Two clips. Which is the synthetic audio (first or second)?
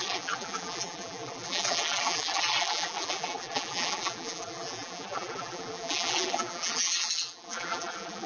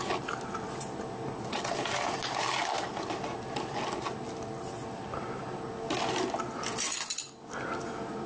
first